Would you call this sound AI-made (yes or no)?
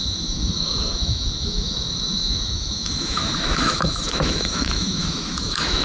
yes